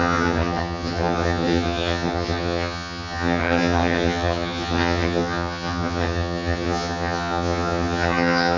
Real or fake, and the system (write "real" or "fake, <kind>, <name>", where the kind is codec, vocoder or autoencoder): fake, vocoder, HiFi-GAN